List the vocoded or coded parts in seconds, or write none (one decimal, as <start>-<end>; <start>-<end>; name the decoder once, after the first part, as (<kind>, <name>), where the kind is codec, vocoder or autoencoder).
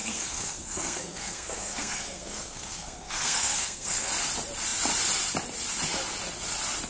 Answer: 0.0-4.1 (codec, SNAC)